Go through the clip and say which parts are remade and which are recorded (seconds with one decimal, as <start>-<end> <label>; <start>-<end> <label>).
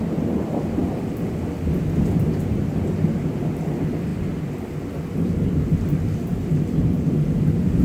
0.0-7.8 recorded